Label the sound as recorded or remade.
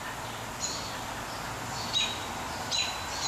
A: recorded